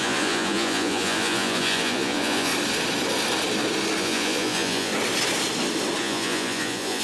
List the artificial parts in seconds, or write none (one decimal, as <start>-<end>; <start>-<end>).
0.0-2.5; 4.0-4.9; 6.0-7.0